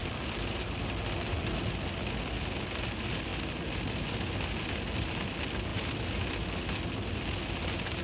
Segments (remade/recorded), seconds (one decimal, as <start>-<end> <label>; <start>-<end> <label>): 0.0-1.5 remade; 1.5-8.0 recorded